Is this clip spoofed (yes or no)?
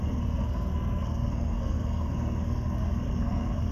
yes